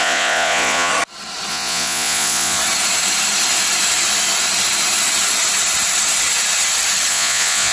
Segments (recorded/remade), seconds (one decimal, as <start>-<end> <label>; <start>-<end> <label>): 0.0-0.9 remade; 0.9-1.5 recorded; 1.5-2.6 remade; 2.6-7.1 recorded; 7.1-7.7 remade